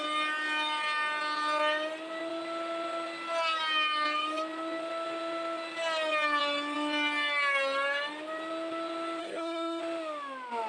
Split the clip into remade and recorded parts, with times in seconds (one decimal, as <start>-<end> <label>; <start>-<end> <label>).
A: 0.0-9.2 recorded; 9.2-9.8 remade; 9.8-10.7 recorded